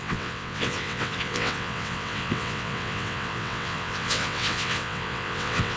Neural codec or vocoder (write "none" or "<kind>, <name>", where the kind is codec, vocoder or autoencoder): vocoder, WaveNeXt